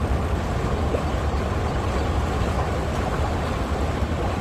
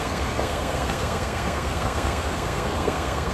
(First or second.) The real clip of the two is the first